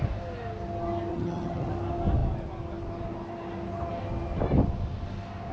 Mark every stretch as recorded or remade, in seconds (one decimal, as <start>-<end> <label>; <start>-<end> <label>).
0.0-1.1 recorded; 1.1-1.7 remade; 1.7-5.5 recorded